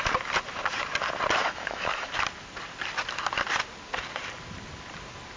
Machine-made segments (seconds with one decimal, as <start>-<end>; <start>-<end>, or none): 1.4-2.1